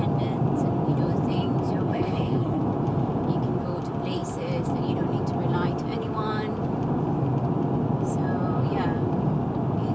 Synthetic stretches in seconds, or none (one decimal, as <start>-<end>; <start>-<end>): 1.9-2.6